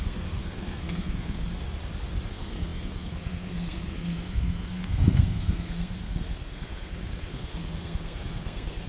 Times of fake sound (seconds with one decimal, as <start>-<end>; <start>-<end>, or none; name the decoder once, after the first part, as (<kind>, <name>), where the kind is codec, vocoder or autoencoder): 0.0-1.4 (codec, SNAC); 2.3-8.9